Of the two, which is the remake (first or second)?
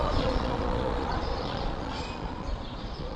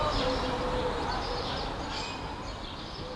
first